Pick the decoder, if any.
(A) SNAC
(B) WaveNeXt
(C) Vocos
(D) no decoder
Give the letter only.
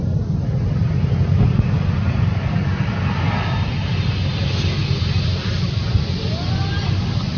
D